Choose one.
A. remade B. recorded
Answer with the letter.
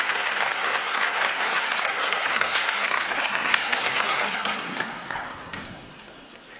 A